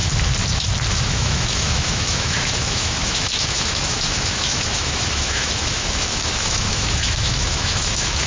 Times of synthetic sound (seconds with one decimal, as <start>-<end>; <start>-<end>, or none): 0.9-8.3